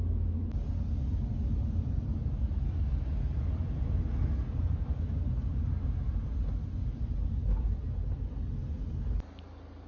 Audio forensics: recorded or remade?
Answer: recorded